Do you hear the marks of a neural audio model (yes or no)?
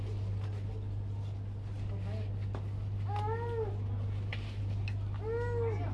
no